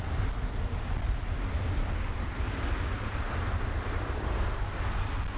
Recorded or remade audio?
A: recorded